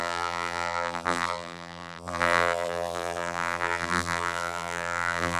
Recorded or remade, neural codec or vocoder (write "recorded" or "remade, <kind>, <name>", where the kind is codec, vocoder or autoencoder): remade, vocoder, BigVGAN v2